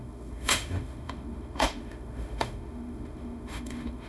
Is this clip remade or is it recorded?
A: remade